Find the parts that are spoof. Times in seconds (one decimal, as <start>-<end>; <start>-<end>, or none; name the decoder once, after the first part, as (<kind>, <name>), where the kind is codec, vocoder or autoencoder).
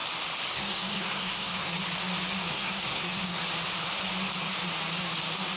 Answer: 0.5-1.7 (codec, SNAC); 2.5-3.4